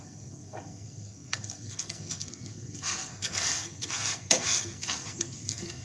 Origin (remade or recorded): remade